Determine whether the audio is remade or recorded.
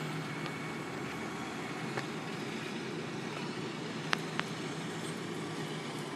recorded